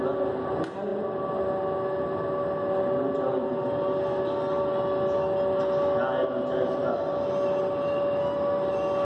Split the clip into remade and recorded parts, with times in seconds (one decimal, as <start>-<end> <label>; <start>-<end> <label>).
0.0-9.0 recorded